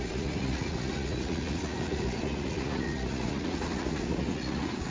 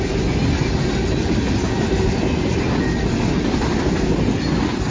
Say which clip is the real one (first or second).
second